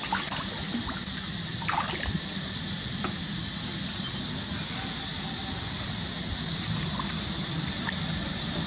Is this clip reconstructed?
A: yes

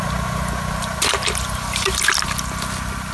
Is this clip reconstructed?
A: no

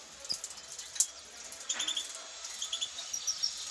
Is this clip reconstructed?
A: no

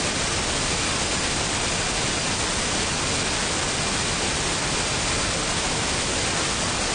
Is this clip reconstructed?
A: no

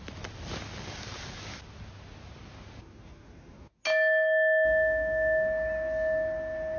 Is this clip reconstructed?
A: no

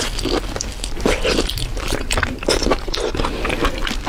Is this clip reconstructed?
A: no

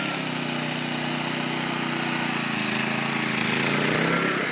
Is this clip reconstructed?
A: no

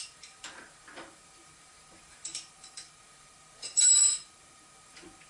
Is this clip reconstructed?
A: yes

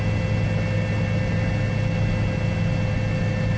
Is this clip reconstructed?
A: no